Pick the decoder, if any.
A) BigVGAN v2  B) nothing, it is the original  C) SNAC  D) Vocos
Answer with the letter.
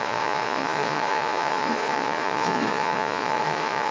D